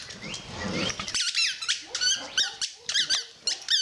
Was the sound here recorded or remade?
recorded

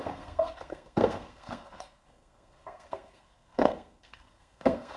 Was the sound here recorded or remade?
remade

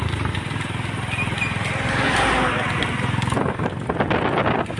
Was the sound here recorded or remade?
recorded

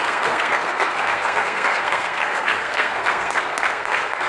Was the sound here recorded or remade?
remade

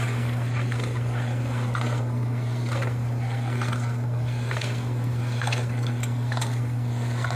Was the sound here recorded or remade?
remade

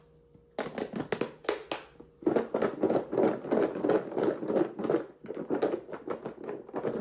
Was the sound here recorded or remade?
recorded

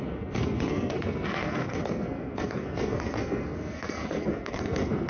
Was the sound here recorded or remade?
remade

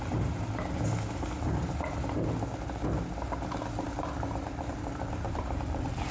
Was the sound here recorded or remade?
recorded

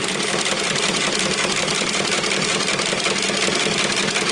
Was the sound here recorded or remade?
recorded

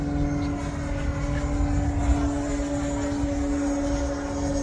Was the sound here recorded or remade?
recorded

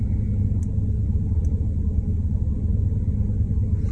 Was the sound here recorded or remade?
recorded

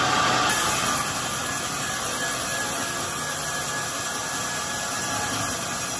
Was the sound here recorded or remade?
recorded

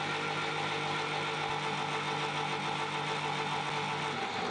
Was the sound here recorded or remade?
recorded